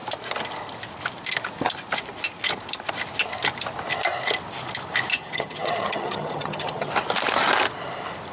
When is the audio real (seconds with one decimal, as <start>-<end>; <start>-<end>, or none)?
0.0-5.1; 6.9-8.3